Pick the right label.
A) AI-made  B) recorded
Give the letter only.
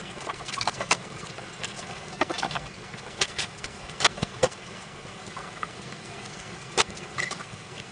A